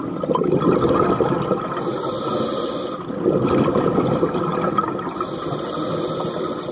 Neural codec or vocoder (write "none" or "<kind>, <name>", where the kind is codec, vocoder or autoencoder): none